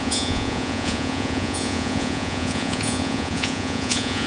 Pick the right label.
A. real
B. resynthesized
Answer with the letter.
B